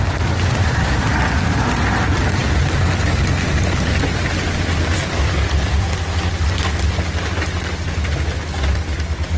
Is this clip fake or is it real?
real